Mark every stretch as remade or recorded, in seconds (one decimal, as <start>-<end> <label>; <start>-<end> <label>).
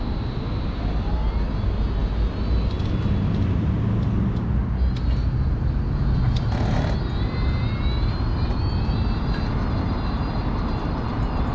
0.0-11.5 recorded